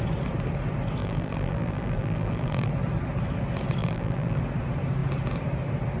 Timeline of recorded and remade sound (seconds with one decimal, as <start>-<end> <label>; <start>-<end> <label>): 0.0-1.0 recorded; 1.0-2.7 remade; 2.7-3.8 recorded; 3.8-4.4 remade; 4.4-6.0 recorded

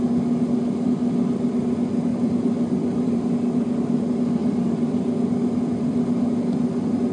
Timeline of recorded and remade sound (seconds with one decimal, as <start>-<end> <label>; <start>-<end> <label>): 0.0-2.1 recorded; 2.1-3.2 remade; 3.2-4.4 recorded; 4.4-5.0 remade; 5.0-7.1 recorded

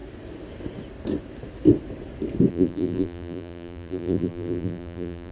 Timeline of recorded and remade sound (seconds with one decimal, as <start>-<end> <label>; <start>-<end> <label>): 0.0-2.5 recorded; 2.5-5.3 remade

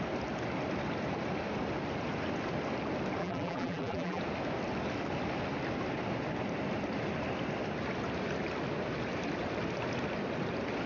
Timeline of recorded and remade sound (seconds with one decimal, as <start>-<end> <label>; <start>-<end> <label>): 0.0-3.2 recorded; 3.2-4.2 remade; 4.2-10.9 recorded

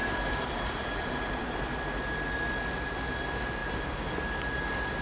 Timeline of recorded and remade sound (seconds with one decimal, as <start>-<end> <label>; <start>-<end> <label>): 0.0-1.6 remade; 1.6-3.6 recorded; 3.6-4.2 remade; 4.2-5.0 recorded

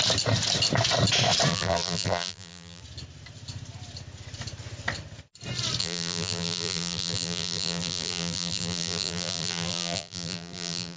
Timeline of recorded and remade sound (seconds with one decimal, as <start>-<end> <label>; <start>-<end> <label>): 0.0-1.5 recorded; 1.5-2.8 remade; 2.8-5.8 recorded; 5.8-11.0 remade

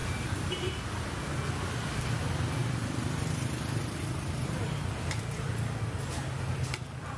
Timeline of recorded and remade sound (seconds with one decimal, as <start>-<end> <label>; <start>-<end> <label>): 0.0-0.8 remade; 0.8-2.6 recorded; 2.6-5.5 remade; 5.5-7.2 recorded

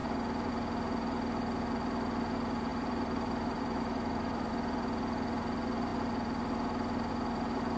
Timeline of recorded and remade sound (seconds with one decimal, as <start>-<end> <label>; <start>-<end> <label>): 0.0-2.7 recorded; 2.7-4.5 remade; 4.5-7.8 recorded